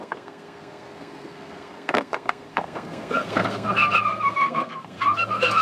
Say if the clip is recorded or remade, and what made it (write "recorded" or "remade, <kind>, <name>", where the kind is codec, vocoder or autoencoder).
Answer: remade, codec, SNAC